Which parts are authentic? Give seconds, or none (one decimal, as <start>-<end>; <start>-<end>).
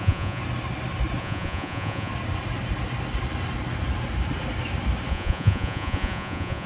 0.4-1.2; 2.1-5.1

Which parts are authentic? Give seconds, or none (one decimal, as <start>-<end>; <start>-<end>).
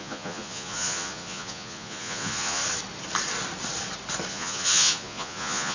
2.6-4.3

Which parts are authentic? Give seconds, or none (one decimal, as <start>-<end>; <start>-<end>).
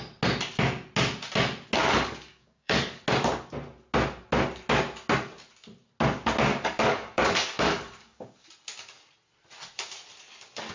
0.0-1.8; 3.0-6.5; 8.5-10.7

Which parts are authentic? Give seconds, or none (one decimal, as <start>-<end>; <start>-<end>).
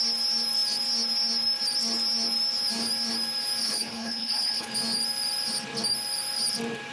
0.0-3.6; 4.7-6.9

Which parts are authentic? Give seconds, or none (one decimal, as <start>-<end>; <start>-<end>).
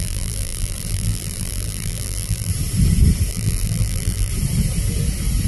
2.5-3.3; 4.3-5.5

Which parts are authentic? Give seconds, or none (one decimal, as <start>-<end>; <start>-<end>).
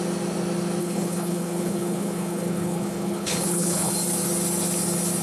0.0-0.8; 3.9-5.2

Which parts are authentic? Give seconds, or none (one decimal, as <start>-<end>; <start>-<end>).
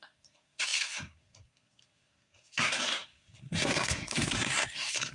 none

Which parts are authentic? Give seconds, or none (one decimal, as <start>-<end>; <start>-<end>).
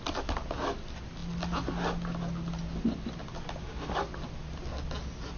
0.0-5.4